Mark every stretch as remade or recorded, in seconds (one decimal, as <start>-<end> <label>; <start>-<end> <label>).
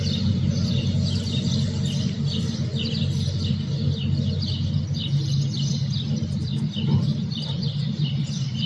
0.0-8.7 recorded